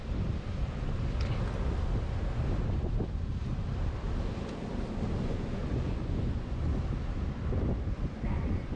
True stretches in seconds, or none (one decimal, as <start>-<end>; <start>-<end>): 0.0-5.2; 6.7-8.0